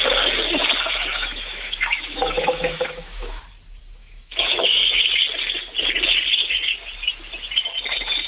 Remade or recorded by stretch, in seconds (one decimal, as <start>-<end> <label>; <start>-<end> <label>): 0.0-1.1 recorded; 1.1-3.4 remade; 3.4-4.0 recorded; 4.0-5.1 remade; 5.1-8.3 recorded